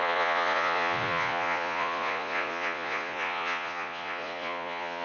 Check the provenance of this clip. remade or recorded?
remade